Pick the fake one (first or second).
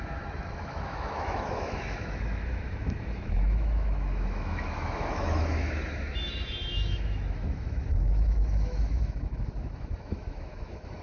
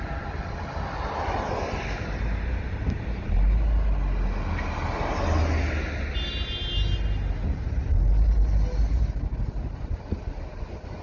first